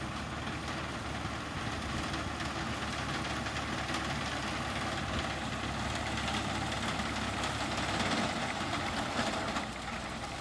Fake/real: real